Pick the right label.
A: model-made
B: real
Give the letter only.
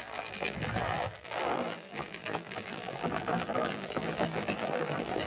A